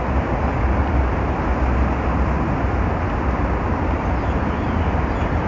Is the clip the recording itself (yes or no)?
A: yes